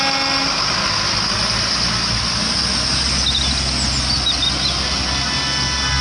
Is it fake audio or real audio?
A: real